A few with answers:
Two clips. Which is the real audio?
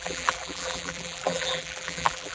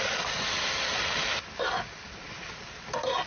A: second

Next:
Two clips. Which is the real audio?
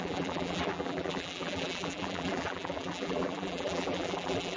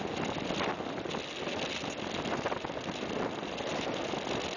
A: second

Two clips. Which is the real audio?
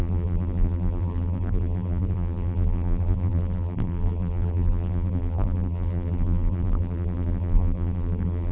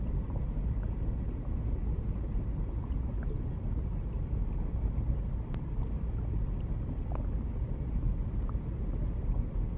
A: second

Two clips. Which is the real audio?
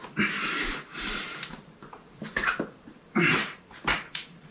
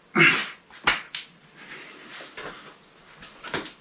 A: second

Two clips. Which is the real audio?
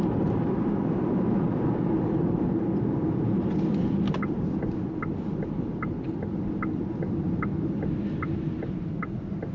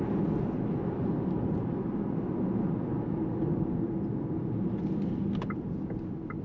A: second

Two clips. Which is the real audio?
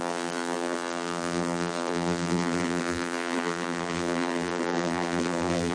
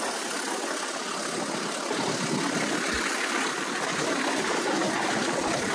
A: second